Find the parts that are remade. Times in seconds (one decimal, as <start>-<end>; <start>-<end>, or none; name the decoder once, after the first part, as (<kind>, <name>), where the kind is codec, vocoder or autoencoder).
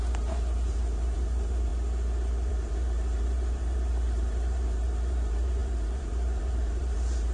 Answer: 0.0-1.7 (vocoder, BigVGAN v2); 2.5-7.3